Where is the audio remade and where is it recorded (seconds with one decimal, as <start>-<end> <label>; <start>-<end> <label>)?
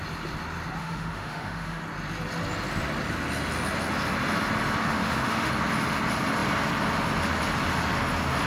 0.0-0.8 recorded; 0.8-1.8 remade; 1.8-4.8 recorded; 4.8-5.5 remade; 5.5-8.5 recorded